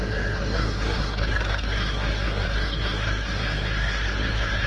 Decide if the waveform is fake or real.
fake